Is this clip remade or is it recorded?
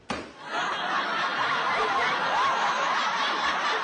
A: remade